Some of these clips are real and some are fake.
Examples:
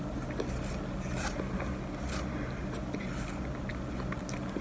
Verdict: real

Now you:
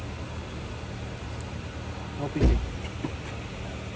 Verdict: real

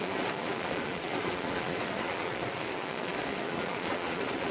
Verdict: fake